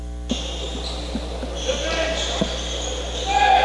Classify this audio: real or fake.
real